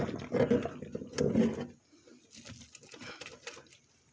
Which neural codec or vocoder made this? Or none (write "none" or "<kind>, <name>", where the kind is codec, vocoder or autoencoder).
none